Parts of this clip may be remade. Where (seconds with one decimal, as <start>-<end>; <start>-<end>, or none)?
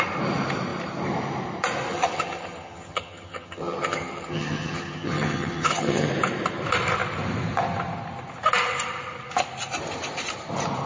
1.9-6.1